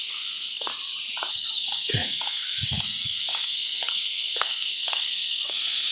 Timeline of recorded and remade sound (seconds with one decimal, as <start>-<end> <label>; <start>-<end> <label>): 0.0-0.7 remade; 0.7-1.3 recorded; 1.3-5.9 remade